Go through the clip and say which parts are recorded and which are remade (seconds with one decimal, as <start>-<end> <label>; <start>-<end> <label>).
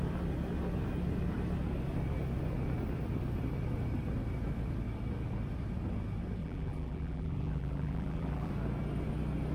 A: 0.0-6.4 recorded; 6.4-8.5 remade; 8.5-9.5 recorded